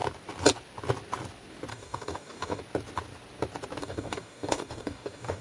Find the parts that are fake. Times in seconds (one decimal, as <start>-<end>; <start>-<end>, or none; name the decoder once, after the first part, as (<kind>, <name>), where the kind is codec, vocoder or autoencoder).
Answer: 1.7-2.6 (codec, DAC); 3.8-5.4